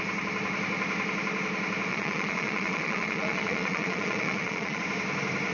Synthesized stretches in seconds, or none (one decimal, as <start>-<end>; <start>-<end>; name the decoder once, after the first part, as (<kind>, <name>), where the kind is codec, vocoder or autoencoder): 1.9-4.8 (vocoder, Vocos)